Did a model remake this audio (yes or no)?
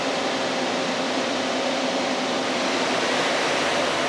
yes